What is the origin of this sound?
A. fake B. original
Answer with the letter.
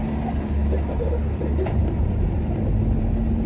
B